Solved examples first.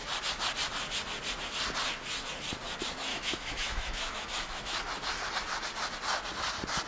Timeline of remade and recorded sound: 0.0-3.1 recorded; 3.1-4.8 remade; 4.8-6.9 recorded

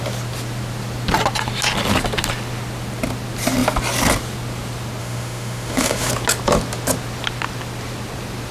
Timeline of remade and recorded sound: 0.0-5.0 recorded; 5.0-6.1 remade; 6.1-8.5 recorded

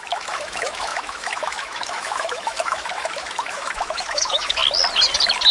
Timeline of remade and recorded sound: 0.0-4.6 remade; 4.6-5.5 recorded